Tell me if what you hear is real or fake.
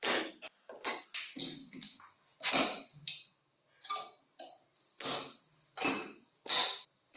real